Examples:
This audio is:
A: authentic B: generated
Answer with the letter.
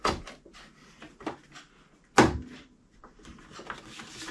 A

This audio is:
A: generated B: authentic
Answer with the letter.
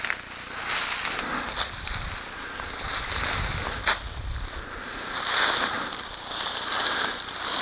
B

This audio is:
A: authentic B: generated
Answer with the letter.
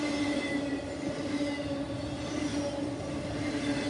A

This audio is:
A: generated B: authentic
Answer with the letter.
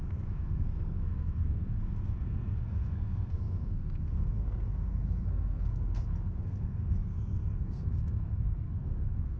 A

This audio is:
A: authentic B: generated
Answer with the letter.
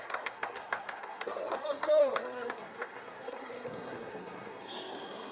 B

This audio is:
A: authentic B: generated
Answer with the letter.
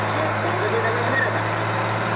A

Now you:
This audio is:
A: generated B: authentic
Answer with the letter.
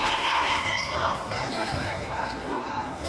A